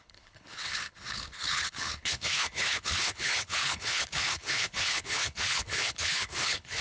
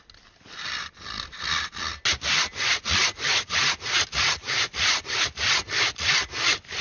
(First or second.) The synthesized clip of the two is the first